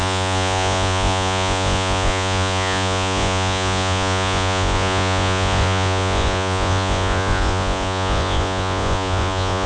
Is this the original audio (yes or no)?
no